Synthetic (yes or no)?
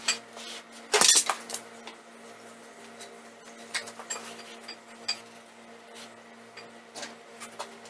no